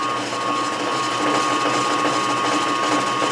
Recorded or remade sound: recorded